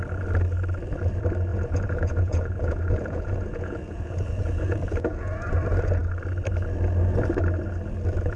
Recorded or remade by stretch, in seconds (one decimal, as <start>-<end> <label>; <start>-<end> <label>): 0.0-1.5 recorded; 1.5-5.5 remade; 5.5-8.4 recorded